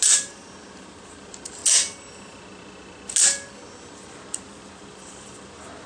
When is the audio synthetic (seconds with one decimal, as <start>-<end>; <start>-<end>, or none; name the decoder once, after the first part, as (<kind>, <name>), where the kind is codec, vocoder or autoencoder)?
0.0-1.6 (vocoder, BigVGAN v2); 5.1-5.9